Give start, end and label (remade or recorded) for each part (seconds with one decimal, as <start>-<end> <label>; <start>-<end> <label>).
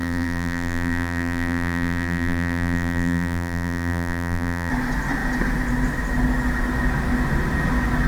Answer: 0.0-4.7 remade; 4.7-8.1 recorded